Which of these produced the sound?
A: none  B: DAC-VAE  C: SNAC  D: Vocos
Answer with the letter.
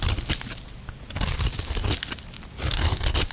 A